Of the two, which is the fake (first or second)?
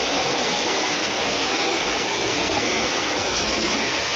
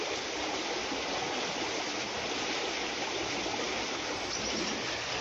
first